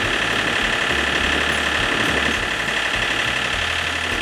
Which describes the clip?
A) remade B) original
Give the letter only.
B